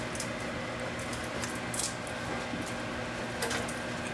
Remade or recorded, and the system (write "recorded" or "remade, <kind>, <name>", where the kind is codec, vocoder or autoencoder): recorded